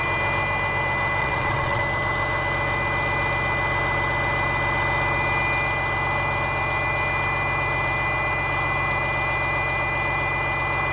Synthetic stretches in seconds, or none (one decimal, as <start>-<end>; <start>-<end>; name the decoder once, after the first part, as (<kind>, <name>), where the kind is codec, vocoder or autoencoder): 1.2-1.8 (vocoder, Vocos)